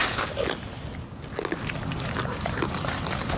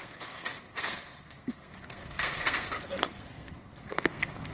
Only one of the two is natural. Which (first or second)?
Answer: first